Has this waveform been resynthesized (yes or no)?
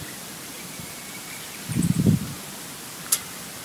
yes